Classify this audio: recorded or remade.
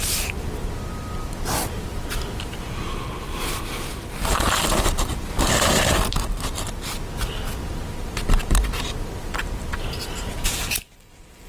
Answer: recorded